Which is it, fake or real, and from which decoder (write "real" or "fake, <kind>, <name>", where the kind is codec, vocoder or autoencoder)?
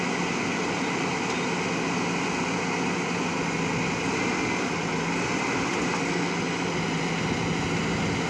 real